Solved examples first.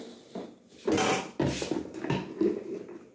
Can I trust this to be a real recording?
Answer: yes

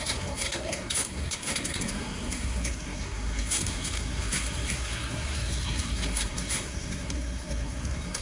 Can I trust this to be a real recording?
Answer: no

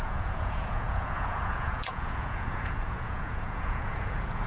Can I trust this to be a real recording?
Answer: no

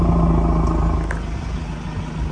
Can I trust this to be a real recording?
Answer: yes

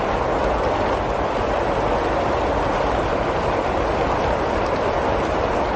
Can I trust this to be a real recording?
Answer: yes